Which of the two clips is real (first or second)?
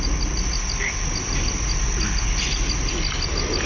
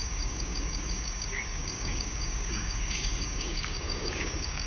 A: first